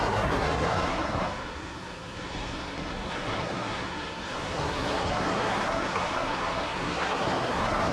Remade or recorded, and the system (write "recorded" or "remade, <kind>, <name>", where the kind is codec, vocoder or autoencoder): remade, codec, SNAC